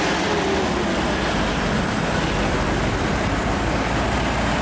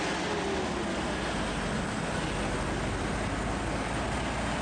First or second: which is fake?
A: first